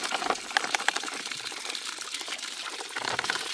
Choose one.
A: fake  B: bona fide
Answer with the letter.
A